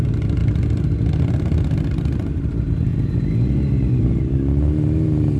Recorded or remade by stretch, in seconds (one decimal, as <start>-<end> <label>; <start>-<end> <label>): 0.0-5.4 recorded